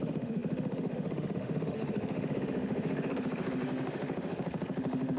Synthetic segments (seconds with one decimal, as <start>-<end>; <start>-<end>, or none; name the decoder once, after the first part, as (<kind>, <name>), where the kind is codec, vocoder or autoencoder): 0.0-5.2 (autoencoder, DAC-VAE)

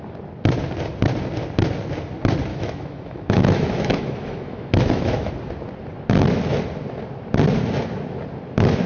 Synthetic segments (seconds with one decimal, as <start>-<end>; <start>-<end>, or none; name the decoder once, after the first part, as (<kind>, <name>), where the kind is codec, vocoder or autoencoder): 2.5-5.3 (autoencoder, DAC-VAE)